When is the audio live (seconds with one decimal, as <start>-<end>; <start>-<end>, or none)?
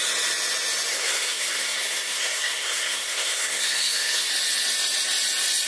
0.0-0.9; 4.3-5.7